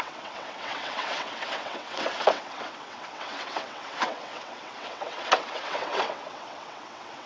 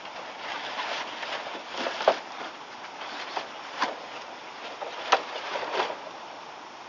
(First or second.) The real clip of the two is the second